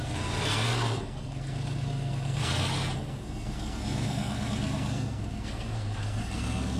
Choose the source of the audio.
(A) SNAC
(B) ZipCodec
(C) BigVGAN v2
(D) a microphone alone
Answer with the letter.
A